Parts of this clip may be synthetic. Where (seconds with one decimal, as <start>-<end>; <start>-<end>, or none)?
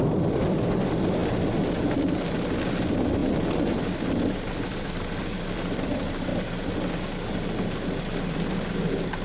0.0-1.2; 2.7-6.3; 8.0-9.2